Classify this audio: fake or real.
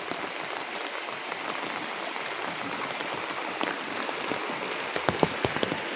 real